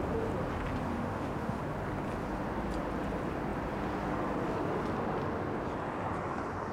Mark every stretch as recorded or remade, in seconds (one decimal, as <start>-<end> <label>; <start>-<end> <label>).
0.0-0.9 recorded; 0.9-1.6 remade; 1.6-6.7 recorded